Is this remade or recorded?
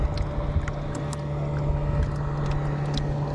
recorded